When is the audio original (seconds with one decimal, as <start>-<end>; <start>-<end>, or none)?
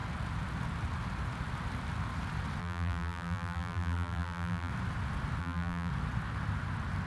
0.0-2.6; 4.7-5.4; 5.9-7.1